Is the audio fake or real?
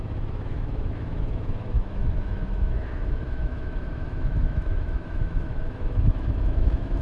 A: fake